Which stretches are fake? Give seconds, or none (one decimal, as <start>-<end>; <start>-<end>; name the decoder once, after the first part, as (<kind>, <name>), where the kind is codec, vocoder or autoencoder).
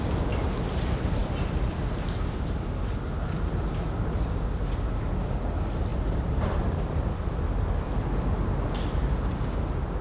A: 1.2-5.5 (vocoder, BigVGAN v2); 5.9-7.9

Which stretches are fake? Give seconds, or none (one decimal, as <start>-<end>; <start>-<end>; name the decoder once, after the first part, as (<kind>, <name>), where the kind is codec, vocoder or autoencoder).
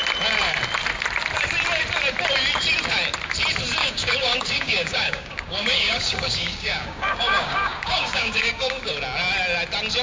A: 3.8-8.9 (codec, DAC)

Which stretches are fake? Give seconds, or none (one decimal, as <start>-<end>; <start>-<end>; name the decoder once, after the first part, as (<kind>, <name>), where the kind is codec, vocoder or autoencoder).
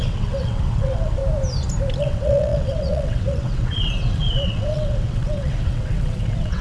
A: 0.0-1.2 (vocoder, WaveNeXt); 2.0-6.6